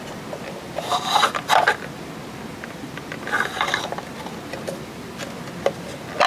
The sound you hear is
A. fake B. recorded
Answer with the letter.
B